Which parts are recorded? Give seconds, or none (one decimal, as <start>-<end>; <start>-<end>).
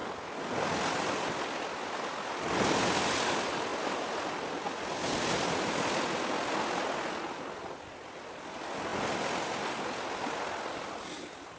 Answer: 0.0-11.6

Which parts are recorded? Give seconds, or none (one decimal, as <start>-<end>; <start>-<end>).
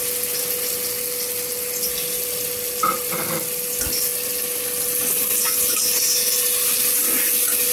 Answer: 0.0-7.7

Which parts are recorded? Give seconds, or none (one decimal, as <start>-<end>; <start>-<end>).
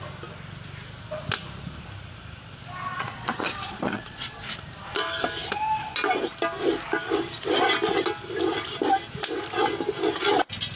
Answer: 0.0-2.9; 4.5-10.8